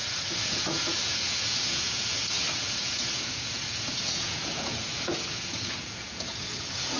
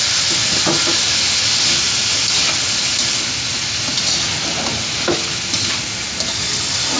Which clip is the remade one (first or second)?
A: first